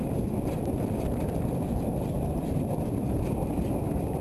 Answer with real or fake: fake